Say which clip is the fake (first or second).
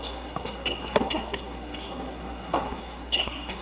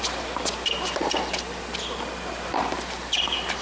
first